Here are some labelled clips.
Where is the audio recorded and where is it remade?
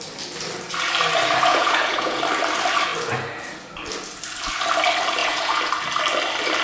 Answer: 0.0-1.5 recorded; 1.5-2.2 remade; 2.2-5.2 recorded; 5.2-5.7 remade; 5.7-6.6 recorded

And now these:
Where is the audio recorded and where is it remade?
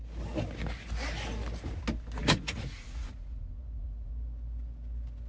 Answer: 0.0-2.2 recorded; 2.2-4.1 remade; 4.1-5.3 recorded